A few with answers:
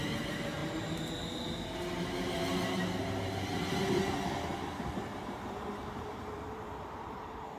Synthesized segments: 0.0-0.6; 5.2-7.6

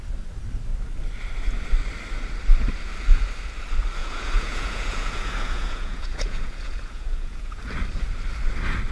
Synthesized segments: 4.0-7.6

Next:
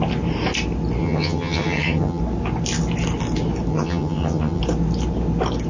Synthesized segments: 1.0-2.2; 3.7-4.6

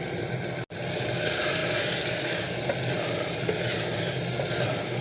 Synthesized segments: none

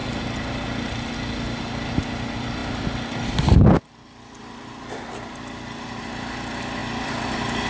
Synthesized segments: none

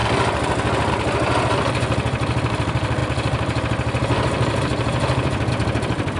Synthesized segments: none

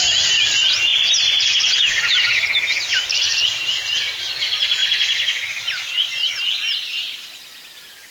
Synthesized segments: none